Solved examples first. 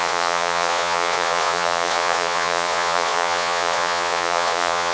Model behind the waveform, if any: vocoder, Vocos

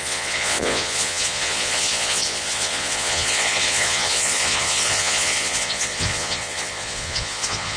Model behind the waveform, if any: vocoder, Vocos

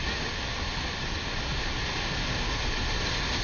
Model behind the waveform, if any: none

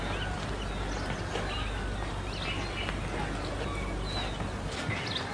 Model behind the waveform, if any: none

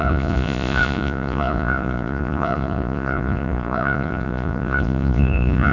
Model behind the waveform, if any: vocoder, Vocos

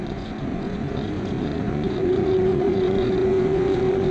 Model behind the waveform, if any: vocoder, Vocos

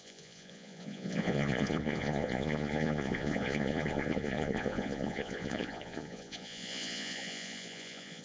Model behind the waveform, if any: vocoder, Vocos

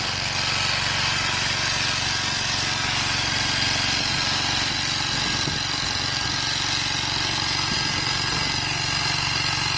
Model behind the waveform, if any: none